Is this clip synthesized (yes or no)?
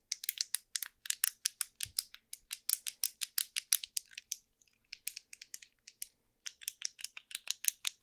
no